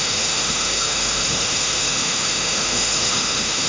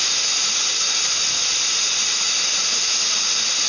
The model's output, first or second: first